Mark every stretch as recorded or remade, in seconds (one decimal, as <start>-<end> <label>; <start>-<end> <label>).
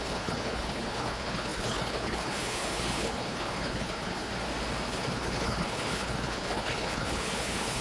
0.0-4.3 remade; 4.3-4.9 recorded; 4.9-7.8 remade